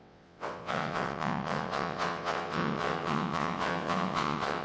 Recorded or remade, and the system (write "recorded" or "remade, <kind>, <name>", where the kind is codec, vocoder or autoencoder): remade, vocoder, WaveNeXt